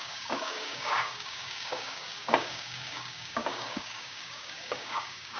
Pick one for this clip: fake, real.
fake